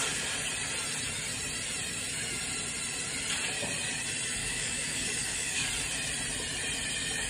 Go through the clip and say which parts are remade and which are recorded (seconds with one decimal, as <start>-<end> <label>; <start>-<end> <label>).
0.0-4.4 recorded; 4.4-5.7 remade; 5.7-7.3 recorded